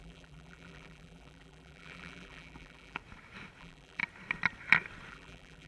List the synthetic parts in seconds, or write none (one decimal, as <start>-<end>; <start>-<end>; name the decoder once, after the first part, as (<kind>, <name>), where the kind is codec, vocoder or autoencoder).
0.0-3.0 (vocoder, BigVGAN v2); 3.6-4.0; 5.1-5.7